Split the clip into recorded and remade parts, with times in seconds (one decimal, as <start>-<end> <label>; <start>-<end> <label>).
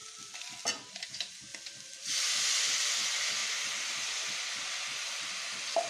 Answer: 0.0-3.4 recorded; 3.4-4.4 remade; 4.4-4.9 recorded; 4.9-5.9 remade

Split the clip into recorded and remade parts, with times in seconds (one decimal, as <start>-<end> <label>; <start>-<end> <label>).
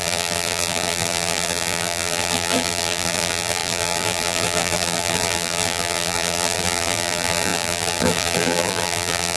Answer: 0.0-9.4 remade